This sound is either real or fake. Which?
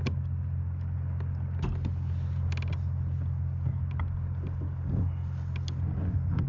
real